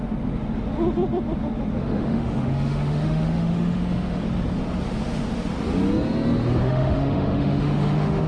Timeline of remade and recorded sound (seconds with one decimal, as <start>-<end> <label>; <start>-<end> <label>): 0.0-1.8 recorded; 1.8-4.2 remade; 4.2-6.6 recorded; 6.6-8.3 remade